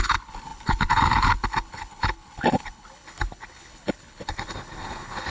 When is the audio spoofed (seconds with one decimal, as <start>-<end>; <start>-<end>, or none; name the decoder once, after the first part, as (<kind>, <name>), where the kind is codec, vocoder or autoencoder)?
0.0-5.3 (codec, HILCodec)